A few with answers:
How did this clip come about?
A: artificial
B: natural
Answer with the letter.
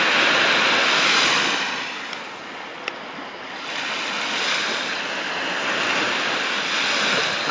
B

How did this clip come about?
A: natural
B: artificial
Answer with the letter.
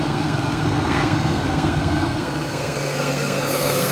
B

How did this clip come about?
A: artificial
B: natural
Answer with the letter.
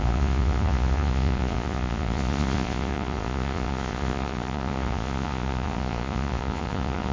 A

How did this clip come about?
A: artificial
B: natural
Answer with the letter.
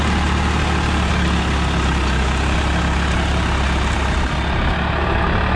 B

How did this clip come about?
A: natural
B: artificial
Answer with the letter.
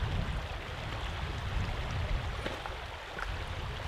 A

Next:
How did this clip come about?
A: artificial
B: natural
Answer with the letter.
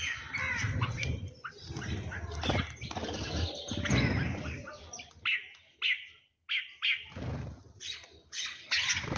B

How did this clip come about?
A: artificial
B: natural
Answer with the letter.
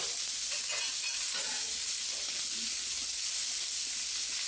B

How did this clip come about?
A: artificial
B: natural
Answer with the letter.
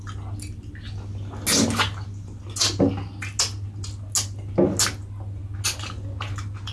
B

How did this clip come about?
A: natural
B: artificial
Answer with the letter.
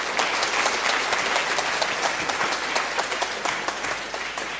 A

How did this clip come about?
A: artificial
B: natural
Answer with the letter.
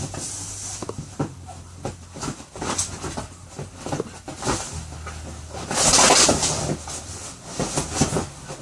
B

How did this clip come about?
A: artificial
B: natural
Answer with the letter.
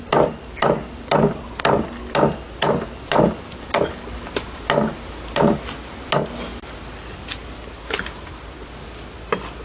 B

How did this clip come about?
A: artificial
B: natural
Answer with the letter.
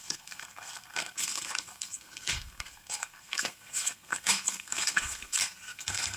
A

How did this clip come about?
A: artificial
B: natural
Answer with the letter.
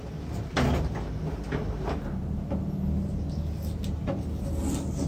B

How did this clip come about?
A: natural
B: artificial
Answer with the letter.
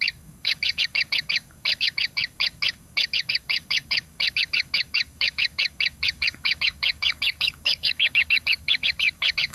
B